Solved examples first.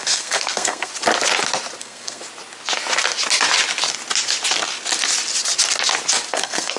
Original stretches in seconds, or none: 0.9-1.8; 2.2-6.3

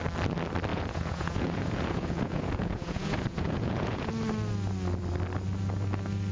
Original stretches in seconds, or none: 0.0-0.7; 4.1-6.3

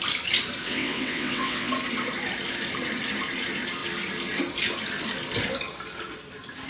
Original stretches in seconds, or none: 0.0-0.6; 1.7-6.7

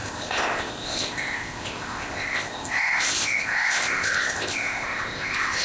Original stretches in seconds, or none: none